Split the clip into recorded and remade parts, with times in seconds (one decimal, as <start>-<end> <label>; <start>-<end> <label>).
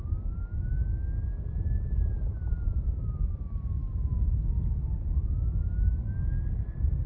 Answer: 0.0-1.5 recorded; 1.5-3.4 remade; 3.4-7.1 recorded